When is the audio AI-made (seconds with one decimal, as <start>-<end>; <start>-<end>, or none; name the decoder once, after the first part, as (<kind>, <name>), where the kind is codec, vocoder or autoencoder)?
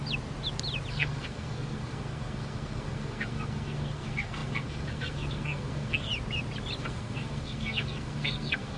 0.9-6.1 (codec, SNAC); 6.8-8.8